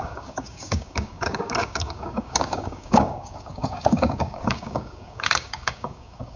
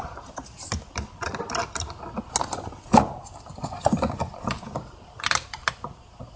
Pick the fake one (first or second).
first